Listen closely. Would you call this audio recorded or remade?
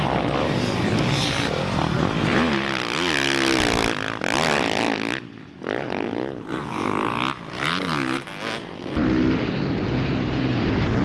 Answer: recorded